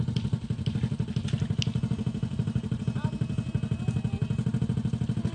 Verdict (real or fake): real